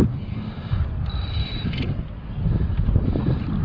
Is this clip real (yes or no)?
yes